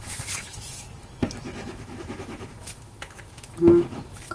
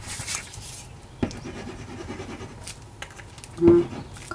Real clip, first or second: second